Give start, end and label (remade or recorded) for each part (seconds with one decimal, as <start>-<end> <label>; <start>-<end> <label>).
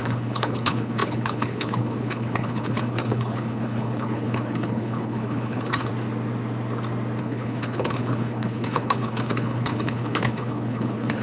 0.0-5.9 remade; 5.9-7.2 recorded; 7.2-11.2 remade